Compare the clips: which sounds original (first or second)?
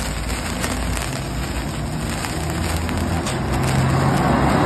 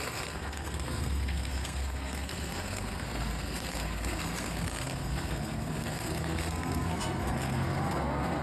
first